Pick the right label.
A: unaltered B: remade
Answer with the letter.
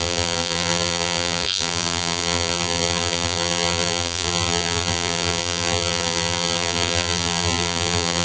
B